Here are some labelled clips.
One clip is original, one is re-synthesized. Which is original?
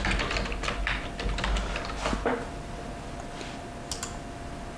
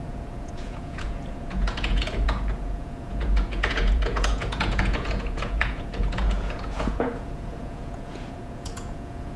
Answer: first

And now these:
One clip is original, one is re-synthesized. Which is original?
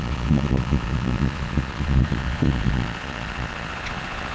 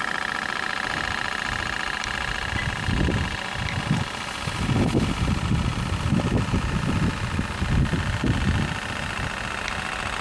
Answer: second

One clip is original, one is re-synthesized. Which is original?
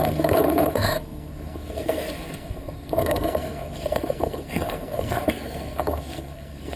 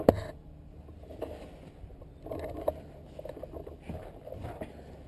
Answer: second